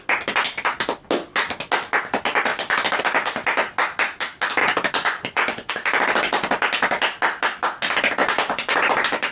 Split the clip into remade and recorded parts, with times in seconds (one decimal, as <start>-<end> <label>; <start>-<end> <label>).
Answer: 0.0-2.5 recorded; 2.5-3.0 remade; 3.0-4.6 recorded; 4.6-5.7 remade; 5.7-8.2 recorded; 8.2-9.3 remade